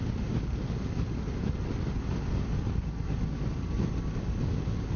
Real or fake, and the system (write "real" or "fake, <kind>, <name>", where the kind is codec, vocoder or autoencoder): real